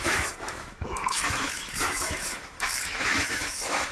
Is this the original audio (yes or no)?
no